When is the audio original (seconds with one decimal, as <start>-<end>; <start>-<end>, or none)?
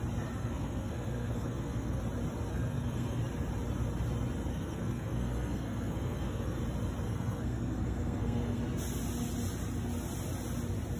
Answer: 0.0-0.4; 2.0-2.5; 3.2-4.5; 6.6-7.1; 8.6-11.0